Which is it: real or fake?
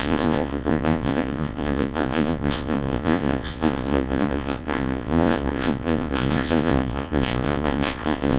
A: fake